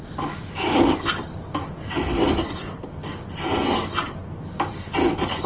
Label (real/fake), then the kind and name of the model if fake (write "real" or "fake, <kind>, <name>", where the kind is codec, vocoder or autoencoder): real